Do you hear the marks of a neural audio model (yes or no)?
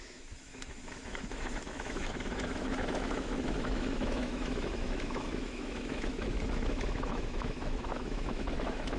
yes